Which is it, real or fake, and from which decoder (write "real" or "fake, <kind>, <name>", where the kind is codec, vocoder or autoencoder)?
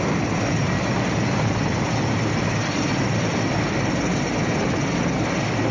real